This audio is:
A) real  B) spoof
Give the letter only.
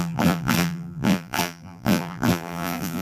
B